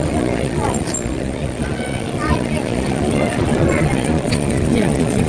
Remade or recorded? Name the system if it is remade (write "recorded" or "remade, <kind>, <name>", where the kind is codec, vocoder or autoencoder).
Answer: remade, vocoder, Vocos